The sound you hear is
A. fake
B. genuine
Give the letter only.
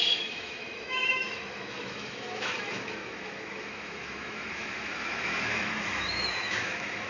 A